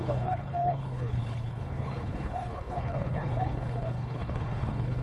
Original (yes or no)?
no